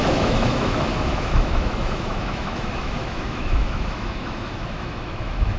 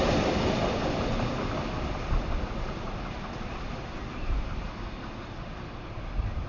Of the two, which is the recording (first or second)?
second